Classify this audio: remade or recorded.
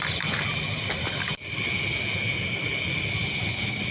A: recorded